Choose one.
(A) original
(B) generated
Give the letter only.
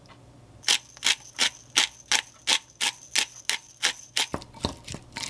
A